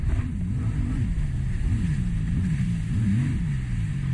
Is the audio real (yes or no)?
yes